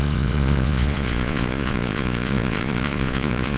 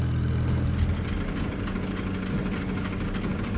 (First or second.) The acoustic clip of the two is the second